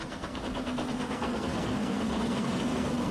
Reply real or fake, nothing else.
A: fake